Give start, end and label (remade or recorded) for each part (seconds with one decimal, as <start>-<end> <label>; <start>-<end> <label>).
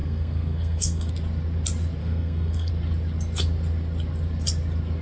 0.0-1.1 remade; 1.1-2.0 recorded; 2.0-2.7 remade; 2.7-5.0 recorded